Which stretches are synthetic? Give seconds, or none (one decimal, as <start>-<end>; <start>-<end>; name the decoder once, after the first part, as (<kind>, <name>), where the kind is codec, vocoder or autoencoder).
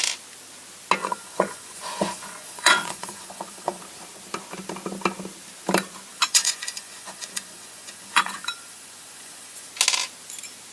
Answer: 1.0-3.8 (vocoder, Vocos); 6.1-9.7